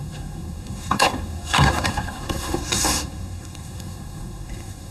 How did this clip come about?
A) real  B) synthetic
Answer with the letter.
B